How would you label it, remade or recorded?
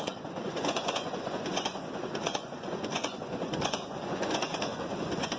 remade